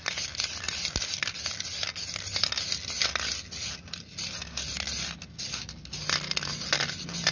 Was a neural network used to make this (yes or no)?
no